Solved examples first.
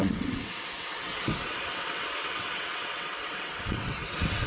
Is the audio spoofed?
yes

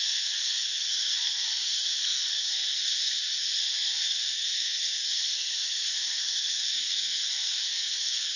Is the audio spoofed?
yes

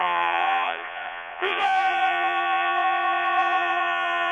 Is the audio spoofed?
yes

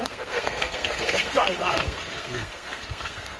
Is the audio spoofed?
yes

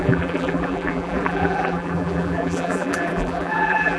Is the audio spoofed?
yes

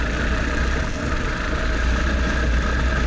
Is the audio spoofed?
no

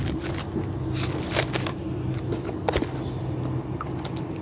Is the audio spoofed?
no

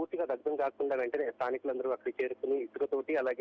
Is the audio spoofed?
no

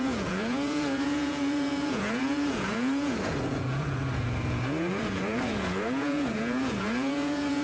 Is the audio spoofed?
yes